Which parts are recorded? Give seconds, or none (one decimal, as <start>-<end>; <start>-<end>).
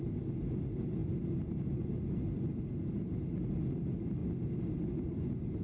0.0-5.6